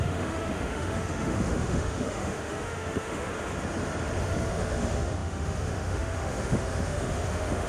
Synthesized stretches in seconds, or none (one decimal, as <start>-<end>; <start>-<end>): 0.0-3.3; 4.2-7.7